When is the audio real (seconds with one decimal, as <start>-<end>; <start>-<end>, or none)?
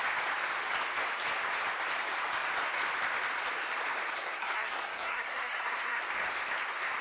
0.0-4.1; 6.0-7.0